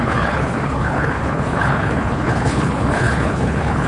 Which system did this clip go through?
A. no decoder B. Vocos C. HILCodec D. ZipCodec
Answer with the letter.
C